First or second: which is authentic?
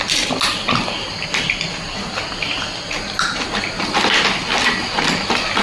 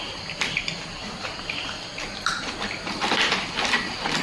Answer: first